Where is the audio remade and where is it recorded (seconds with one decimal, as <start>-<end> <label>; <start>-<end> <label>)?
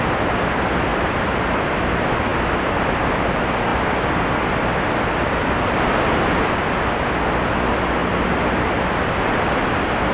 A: 0.0-10.1 recorded